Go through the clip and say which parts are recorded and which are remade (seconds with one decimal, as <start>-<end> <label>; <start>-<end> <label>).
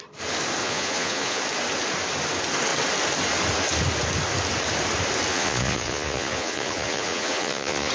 0.0-0.6 recorded; 0.6-1.4 remade; 1.4-5.3 recorded; 5.3-7.9 remade